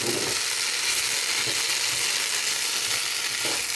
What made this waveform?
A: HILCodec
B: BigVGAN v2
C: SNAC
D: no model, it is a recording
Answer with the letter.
D